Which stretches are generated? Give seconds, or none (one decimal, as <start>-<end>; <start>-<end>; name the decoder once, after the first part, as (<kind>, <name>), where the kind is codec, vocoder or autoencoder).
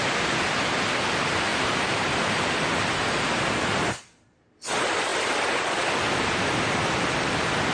1.5-2.5 (vocoder, BigVGAN v2)